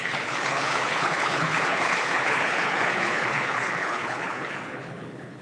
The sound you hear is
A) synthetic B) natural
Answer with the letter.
A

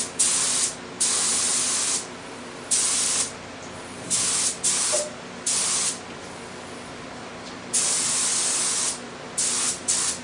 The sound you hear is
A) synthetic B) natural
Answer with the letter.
B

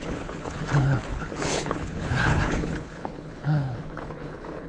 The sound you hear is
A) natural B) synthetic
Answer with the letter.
B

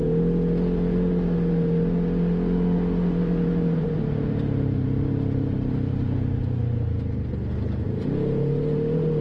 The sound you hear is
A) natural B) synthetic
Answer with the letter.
A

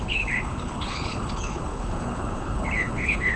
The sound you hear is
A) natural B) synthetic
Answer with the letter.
B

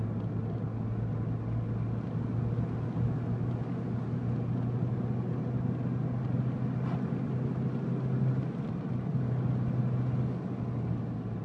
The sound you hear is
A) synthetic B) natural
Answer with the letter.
B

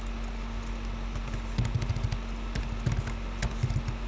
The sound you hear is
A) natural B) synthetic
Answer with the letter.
A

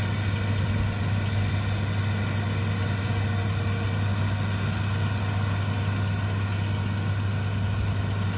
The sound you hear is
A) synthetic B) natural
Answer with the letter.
B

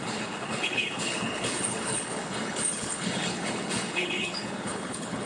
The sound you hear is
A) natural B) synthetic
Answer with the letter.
B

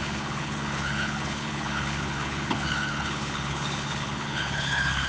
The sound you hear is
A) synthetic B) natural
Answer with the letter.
A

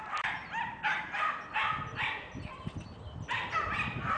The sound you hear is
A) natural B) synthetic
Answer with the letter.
A